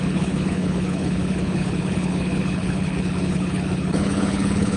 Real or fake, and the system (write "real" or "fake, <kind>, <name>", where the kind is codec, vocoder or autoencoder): fake, codec, HILCodec